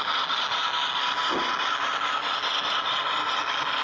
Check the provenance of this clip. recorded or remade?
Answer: recorded